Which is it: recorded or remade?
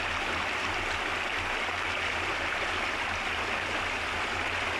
recorded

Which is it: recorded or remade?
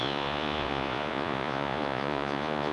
remade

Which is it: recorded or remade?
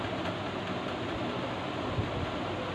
recorded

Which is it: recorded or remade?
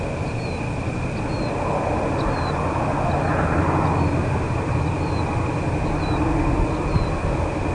recorded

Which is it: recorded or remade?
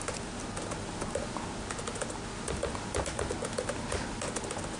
recorded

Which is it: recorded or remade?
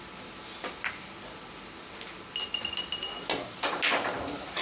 recorded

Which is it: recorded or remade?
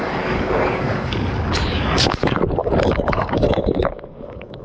remade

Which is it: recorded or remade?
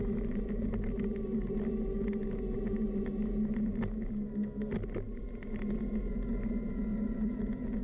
recorded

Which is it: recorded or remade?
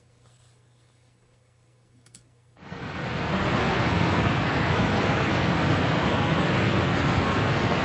remade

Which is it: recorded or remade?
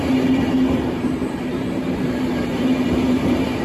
recorded